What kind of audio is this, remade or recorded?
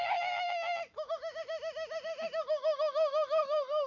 remade